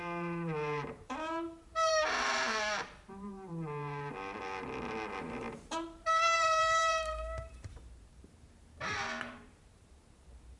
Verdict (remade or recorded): remade